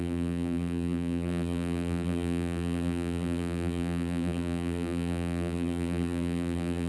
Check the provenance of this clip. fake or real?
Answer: fake